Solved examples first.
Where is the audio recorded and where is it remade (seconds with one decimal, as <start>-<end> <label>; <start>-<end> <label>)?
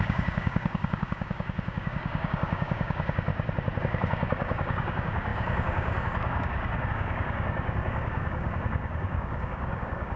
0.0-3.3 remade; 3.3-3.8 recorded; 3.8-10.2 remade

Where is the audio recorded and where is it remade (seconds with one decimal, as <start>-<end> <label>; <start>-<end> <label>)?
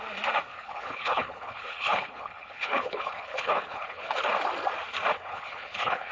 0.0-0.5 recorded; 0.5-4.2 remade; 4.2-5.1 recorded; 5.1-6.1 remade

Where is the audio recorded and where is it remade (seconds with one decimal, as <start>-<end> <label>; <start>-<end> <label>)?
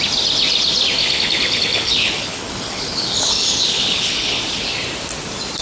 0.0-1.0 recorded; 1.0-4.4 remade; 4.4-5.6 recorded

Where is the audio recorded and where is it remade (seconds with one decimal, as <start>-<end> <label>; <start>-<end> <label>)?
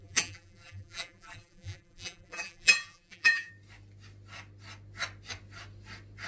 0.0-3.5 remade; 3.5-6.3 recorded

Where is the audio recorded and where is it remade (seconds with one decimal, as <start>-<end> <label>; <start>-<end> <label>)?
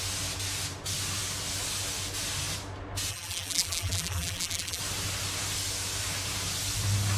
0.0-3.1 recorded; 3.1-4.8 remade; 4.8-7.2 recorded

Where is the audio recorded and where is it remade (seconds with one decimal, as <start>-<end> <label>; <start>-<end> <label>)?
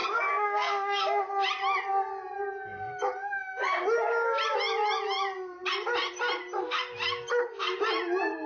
0.0-1.2 remade; 1.2-8.5 recorded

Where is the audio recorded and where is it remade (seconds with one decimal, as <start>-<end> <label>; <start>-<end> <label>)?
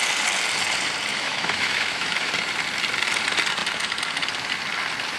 0.0-1.1 recorded; 1.1-2.3 remade; 2.3-5.2 recorded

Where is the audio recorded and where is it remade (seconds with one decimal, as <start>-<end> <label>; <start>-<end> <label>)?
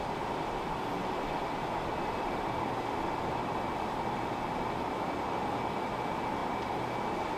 0.0-7.4 recorded